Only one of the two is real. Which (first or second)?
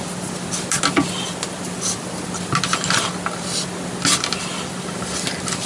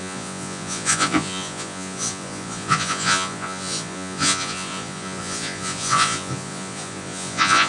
first